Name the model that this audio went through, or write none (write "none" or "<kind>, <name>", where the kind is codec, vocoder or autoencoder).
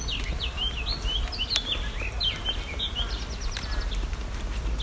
none